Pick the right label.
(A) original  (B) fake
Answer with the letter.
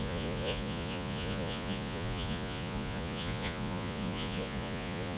B